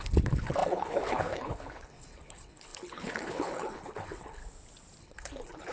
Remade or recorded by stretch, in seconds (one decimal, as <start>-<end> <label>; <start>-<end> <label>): 0.0-4.4 remade; 4.4-5.0 recorded; 5.0-5.7 remade